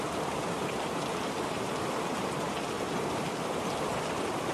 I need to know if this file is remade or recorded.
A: remade